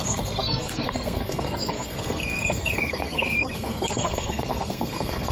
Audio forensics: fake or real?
fake